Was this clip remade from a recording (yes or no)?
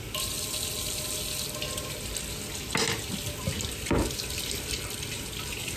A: no